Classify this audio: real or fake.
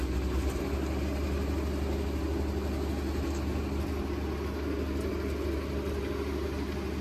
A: real